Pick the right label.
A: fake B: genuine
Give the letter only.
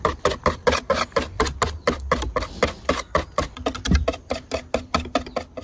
B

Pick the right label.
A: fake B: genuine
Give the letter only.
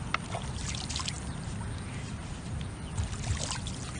B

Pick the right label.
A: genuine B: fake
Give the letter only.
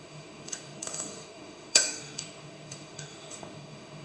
B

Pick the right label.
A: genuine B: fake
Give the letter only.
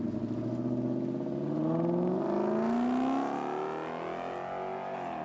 A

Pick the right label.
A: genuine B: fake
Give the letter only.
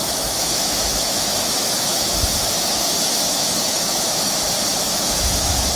B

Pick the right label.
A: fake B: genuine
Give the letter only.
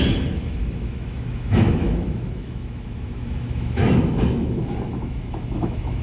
A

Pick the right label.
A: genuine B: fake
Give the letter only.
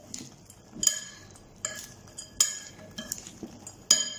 A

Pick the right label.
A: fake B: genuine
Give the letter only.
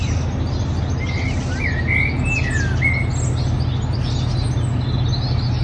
B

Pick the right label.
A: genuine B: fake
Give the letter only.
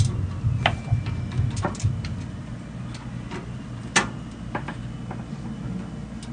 A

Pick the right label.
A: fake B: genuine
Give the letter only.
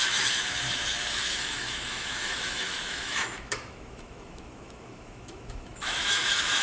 A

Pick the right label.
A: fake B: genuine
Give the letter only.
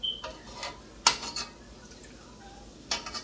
B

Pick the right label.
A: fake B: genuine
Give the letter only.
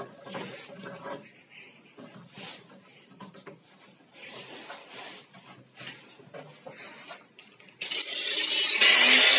B